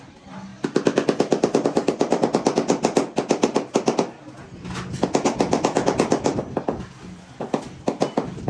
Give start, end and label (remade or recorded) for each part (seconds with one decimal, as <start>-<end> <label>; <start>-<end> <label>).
0.0-8.5 recorded